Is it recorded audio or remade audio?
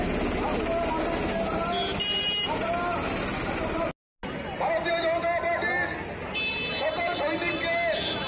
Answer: recorded